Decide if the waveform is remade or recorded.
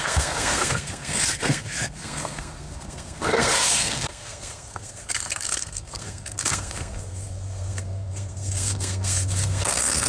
remade